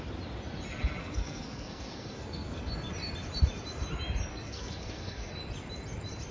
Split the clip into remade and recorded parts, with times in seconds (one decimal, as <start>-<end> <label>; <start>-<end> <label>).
0.0-1.0 recorded; 1.0-2.7 remade; 2.7-4.3 recorded; 4.3-5.3 remade; 5.3-6.3 recorded